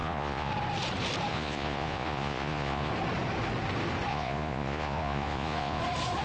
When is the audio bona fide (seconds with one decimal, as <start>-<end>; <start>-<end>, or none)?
0.5-1.3; 2.9-4.1; 5.8-6.2